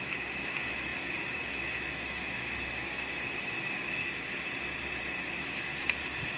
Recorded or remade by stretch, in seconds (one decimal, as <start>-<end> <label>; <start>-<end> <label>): 0.0-4.0 remade; 4.0-5.0 recorded; 5.0-5.7 remade; 5.7-6.4 recorded